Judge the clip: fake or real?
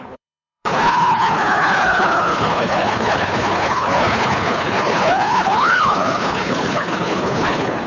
fake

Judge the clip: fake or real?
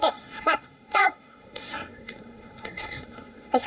fake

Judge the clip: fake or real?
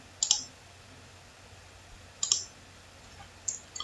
real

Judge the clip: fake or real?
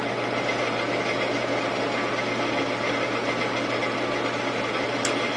real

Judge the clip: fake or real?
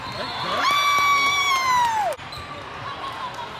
real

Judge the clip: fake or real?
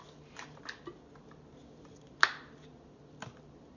real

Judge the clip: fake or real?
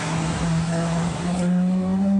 fake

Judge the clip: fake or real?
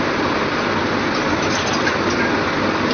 fake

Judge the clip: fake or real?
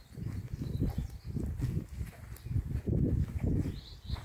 real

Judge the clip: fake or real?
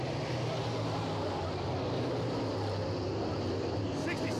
real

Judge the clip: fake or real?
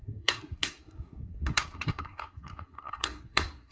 fake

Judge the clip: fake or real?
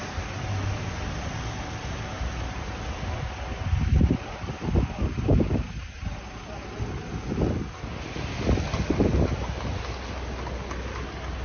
real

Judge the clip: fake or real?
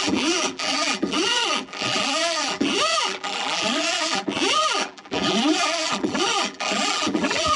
fake